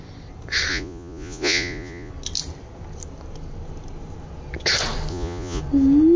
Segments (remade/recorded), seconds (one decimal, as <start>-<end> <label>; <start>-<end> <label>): 0.0-0.7 recorded; 0.7-2.1 remade; 2.1-5.1 recorded; 5.1-5.6 remade; 5.6-6.2 recorded